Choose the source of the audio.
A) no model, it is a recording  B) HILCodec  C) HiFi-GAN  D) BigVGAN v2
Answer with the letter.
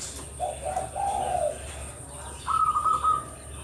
A